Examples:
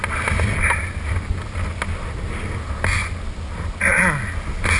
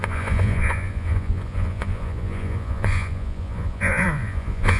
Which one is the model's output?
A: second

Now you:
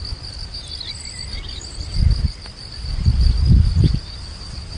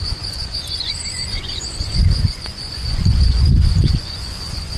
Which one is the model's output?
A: second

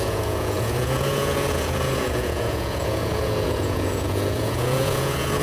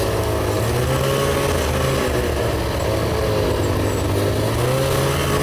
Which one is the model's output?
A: first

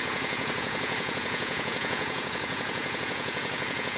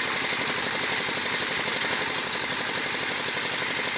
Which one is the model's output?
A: first